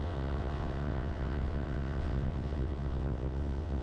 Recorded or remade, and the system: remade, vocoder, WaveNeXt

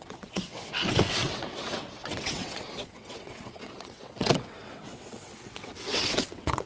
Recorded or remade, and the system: remade, vocoder, WaveNeXt